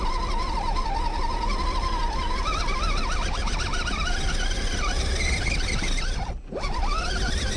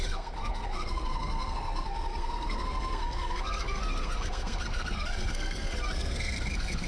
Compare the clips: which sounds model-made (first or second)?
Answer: second